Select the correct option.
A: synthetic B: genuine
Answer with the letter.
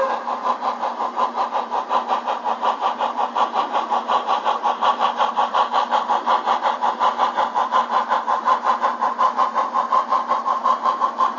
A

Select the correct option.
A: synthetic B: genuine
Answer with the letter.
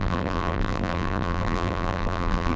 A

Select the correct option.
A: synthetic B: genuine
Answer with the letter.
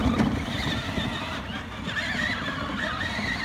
A